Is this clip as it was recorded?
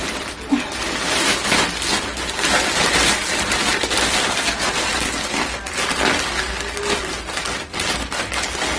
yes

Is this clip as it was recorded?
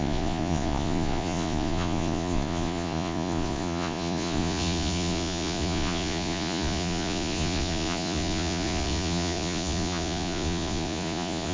no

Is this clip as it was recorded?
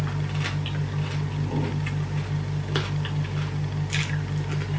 yes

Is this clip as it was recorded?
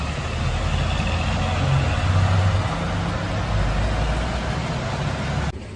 yes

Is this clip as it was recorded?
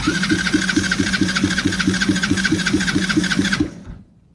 no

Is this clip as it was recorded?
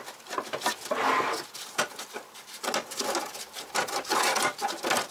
yes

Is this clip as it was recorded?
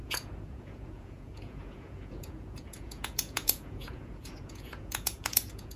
no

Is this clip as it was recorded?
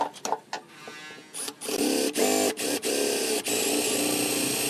yes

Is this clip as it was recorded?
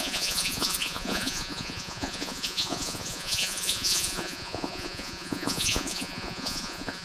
no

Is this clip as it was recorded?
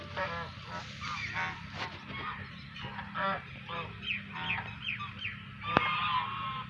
yes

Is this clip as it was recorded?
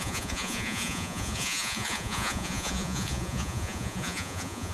no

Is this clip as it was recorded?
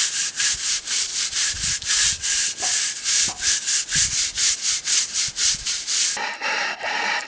yes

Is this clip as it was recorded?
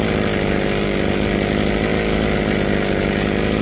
yes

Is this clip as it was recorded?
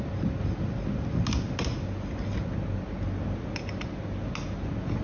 yes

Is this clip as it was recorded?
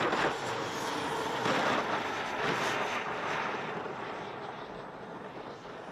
yes